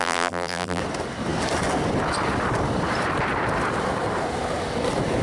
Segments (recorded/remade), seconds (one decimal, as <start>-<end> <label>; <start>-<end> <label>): 0.0-0.8 remade; 0.8-5.2 recorded

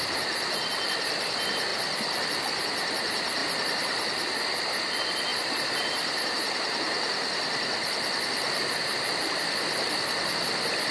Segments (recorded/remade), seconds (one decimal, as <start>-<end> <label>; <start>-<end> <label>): 0.0-5.3 recorded; 5.3-6.5 remade; 6.5-10.9 recorded